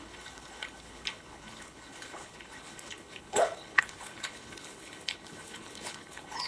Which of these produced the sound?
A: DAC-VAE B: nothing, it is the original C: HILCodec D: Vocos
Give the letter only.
C